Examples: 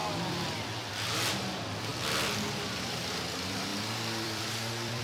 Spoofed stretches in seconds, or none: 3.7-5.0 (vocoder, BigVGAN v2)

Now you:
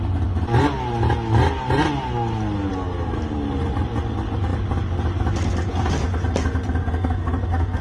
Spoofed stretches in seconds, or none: 6.8-7.8 (codec, SNAC)

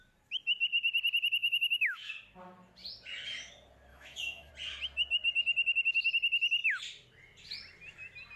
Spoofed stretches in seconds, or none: 1.4-2.1 (autoencoder, DAC-VAE); 3.9-4.5

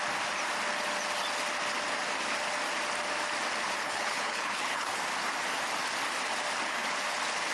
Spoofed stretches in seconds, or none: 3.8-5.0 (codec, HILCodec)

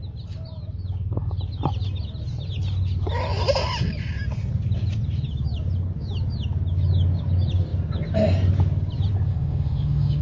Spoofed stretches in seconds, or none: 9.3-10.2 (autoencoder, DAC-VAE)